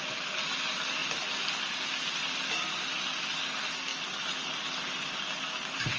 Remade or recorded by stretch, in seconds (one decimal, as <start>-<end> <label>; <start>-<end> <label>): 0.0-6.0 recorded